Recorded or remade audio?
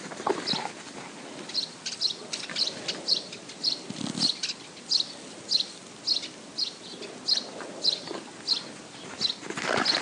recorded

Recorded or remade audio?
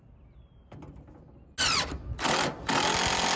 recorded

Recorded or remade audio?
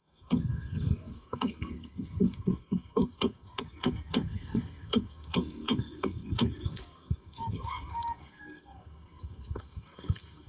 remade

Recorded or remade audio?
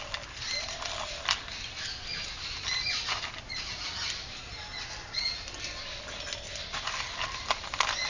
recorded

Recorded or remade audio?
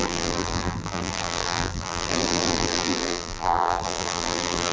remade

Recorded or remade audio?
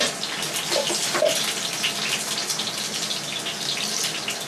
recorded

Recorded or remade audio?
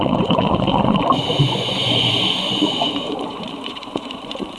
remade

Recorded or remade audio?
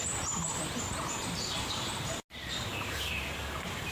recorded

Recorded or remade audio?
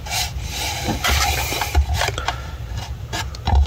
recorded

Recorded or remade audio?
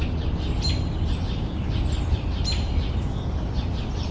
recorded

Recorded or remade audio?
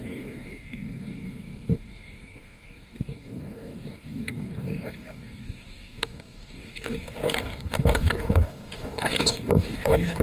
remade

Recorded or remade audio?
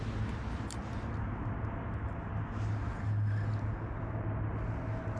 recorded